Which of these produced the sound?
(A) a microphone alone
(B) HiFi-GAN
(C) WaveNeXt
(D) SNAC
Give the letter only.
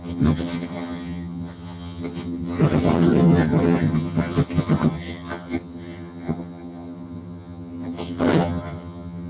B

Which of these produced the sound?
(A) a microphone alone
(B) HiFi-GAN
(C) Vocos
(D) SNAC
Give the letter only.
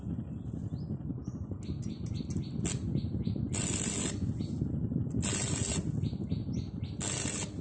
A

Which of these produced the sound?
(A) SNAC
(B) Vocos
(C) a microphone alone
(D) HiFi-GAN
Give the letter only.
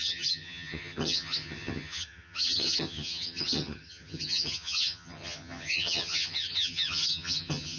D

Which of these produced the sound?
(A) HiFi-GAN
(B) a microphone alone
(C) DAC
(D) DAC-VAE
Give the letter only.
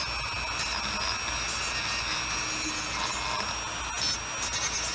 B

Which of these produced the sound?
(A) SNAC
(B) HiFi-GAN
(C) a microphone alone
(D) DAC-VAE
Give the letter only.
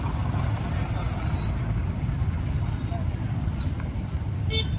C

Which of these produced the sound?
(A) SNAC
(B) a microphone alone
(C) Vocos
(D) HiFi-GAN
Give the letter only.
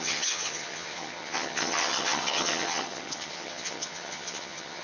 D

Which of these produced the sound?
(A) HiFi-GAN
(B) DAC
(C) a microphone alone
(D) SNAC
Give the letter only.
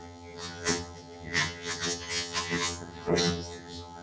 A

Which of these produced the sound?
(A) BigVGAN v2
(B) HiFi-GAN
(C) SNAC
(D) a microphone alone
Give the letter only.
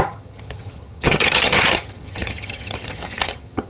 B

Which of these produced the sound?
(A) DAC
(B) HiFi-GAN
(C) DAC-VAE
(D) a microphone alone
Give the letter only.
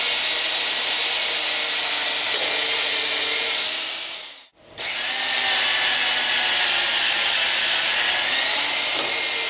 D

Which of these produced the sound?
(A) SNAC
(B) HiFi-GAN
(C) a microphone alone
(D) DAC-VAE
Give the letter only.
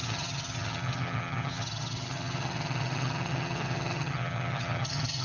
B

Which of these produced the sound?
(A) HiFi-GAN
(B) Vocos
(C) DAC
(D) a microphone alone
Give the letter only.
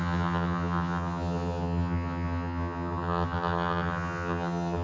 A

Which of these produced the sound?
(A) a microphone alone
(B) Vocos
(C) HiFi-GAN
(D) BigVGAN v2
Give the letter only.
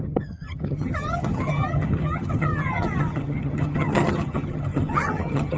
C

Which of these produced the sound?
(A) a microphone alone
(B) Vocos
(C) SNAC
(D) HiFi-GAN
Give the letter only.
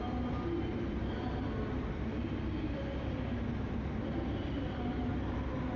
A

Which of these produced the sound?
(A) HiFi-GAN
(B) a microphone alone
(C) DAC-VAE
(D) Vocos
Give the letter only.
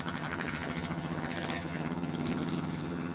A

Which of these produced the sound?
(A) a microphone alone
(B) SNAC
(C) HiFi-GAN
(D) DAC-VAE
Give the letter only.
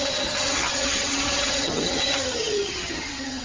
C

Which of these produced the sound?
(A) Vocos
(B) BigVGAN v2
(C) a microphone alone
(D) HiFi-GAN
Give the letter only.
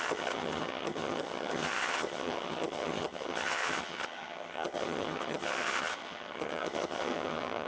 D